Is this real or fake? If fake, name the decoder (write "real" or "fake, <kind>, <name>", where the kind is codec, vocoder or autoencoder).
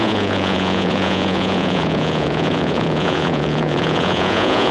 fake, vocoder, Vocos